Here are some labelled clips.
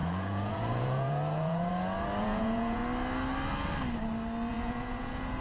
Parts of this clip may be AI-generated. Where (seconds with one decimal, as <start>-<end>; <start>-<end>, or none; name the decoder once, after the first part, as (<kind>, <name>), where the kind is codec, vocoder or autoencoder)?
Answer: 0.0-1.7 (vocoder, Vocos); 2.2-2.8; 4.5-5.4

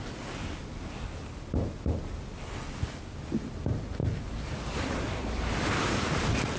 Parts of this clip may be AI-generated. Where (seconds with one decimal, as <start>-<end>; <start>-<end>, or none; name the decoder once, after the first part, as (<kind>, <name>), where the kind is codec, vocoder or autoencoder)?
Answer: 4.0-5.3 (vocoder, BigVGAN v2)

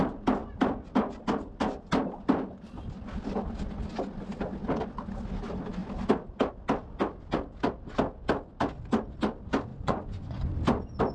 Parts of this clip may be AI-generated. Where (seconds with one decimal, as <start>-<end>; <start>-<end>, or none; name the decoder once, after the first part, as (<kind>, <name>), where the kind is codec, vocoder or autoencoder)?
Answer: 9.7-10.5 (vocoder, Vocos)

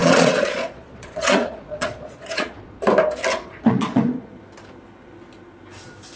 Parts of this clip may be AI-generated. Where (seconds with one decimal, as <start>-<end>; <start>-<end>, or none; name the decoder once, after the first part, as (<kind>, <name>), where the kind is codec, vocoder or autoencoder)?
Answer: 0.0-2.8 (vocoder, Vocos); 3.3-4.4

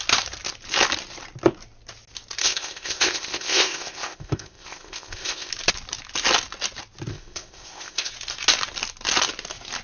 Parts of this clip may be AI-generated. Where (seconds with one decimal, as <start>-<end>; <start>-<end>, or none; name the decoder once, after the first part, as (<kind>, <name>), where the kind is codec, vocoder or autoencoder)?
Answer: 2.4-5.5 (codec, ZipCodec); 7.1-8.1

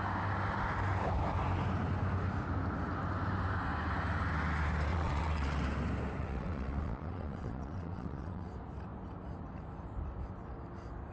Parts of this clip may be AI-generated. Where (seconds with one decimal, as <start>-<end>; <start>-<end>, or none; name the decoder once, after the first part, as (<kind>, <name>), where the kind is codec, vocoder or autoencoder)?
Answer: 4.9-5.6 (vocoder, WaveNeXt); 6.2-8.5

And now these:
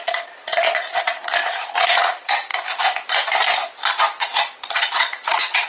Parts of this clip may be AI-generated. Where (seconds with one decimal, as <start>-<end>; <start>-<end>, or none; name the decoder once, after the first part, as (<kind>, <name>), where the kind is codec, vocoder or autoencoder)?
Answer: 0.0-2.5 (vocoder, Vocos); 4.2-5.7